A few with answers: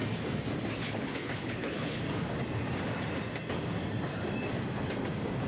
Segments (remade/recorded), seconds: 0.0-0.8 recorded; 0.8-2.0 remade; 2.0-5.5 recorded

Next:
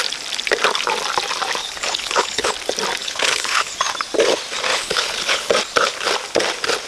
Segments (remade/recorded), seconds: 0.0-1.6 recorded; 1.6-2.5 remade; 2.5-3.0 recorded; 3.0-3.8 remade; 3.8-4.7 recorded; 4.7-5.5 remade; 5.5-6.9 recorded

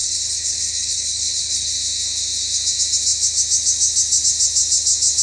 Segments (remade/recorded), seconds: 0.0-1.7 remade; 1.7-5.2 recorded

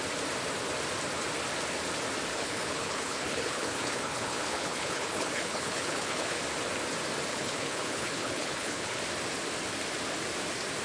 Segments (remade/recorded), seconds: 0.0-2.3 recorded; 2.3-6.4 remade; 6.4-7.3 recorded; 7.3-9.0 remade; 9.0-10.8 recorded

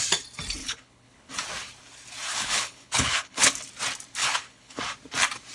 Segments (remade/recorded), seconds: 0.0-0.6 recorded; 0.6-1.3 remade; 1.3-2.3 recorded; 2.3-3.5 remade; 3.5-4.2 recorded; 4.2-4.8 remade; 4.8-5.5 recorded

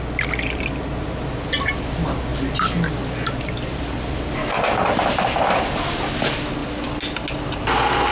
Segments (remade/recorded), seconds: 0.0-8.1 recorded